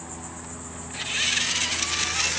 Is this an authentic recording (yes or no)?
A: yes